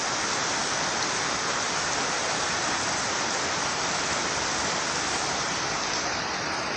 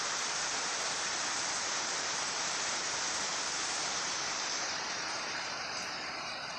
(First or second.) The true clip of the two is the first